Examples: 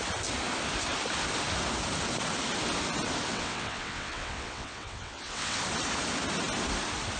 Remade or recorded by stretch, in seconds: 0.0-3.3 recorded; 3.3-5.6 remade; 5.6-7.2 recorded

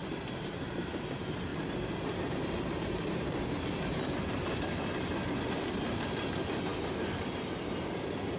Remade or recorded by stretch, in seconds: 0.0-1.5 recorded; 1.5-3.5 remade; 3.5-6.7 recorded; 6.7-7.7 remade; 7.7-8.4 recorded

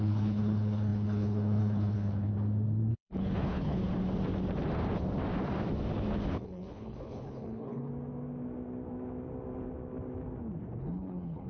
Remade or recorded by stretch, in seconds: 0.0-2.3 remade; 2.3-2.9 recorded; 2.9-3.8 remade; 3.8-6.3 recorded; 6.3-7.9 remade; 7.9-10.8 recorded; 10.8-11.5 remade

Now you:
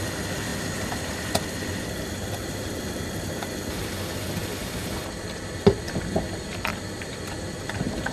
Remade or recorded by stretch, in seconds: 0.0-0.5 recorded; 0.5-3.9 remade; 3.9-4.5 recorded; 4.5-5.0 remade; 5.0-6.7 recorded; 6.7-8.1 remade

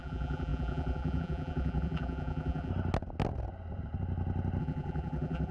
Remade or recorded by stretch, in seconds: 0.0-2.7 remade; 2.7-4.6 recorded; 4.6-5.5 remade

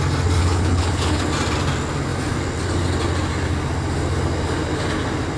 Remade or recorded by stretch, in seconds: 0.0-0.4 recorded; 0.4-1.2 remade; 1.2-5.4 recorded

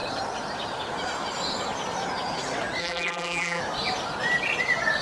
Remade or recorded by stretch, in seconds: 0.0-2.8 recorded; 2.8-3.6 remade; 3.6-5.0 recorded